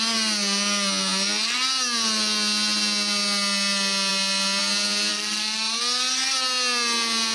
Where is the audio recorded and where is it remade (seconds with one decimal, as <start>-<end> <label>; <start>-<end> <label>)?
0.0-5.1 recorded; 5.1-5.8 remade; 5.8-7.3 recorded